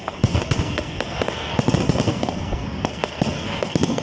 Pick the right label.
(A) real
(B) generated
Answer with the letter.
B